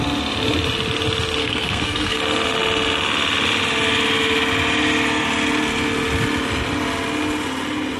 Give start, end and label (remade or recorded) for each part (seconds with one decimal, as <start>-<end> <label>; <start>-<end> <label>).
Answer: 0.0-1.4 recorded; 1.4-2.2 remade; 2.2-8.0 recorded